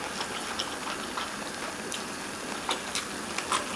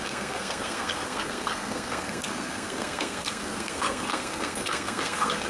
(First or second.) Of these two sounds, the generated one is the second